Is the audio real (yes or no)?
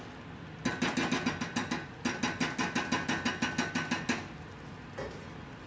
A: yes